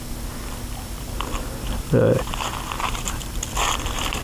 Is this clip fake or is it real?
fake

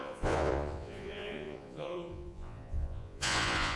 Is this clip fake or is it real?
fake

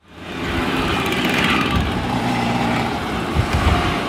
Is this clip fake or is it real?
fake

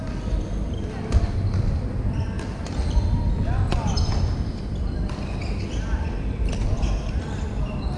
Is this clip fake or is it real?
real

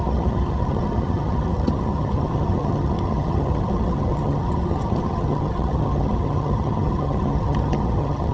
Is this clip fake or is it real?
fake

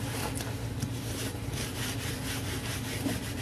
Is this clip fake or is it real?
real